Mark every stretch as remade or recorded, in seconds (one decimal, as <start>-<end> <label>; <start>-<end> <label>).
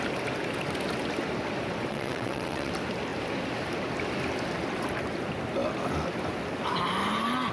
0.0-1.9 recorded; 1.9-2.7 remade; 2.7-7.5 recorded